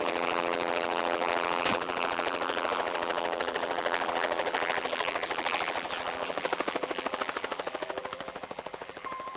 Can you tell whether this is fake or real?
fake